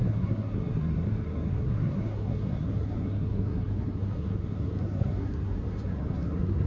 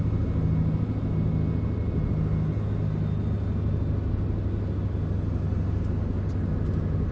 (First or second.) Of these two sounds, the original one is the second